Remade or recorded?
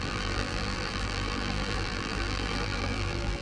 remade